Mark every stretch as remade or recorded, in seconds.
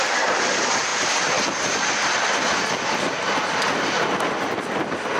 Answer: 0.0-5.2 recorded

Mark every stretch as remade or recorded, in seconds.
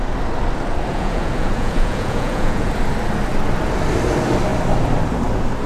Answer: 0.0-0.9 recorded; 0.9-2.7 remade; 2.7-5.7 recorded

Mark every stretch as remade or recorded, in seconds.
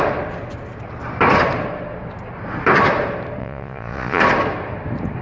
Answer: 0.0-3.4 recorded; 3.4-4.2 remade; 4.2-5.2 recorded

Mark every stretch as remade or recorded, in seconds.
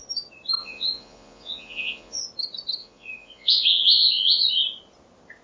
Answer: 0.0-0.6 recorded; 0.6-2.2 remade; 2.2-2.8 recorded; 2.8-4.4 remade; 4.4-5.4 recorded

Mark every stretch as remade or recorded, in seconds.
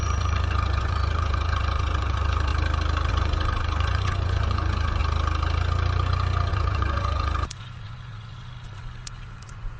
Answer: 0.0-2.5 remade; 2.5-3.1 recorded; 3.1-5.0 remade; 5.0-6.5 recorded; 6.5-9.8 remade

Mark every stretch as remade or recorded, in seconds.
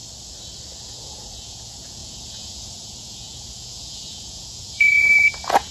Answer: 0.0-0.8 recorded; 0.8-5.7 remade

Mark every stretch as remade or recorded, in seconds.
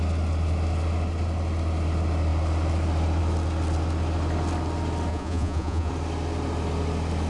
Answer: 0.0-5.1 recorded; 5.1-5.9 remade; 5.9-7.3 recorded